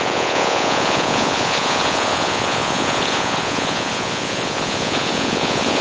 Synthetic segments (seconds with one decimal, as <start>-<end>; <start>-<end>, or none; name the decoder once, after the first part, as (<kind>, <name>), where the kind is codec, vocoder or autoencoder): 0.0-5.8 (vocoder, Vocos)